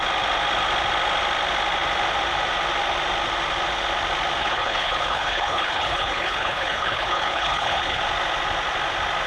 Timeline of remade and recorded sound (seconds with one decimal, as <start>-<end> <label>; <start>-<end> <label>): 0.0-4.4 recorded; 4.4-8.0 remade; 8.0-9.3 recorded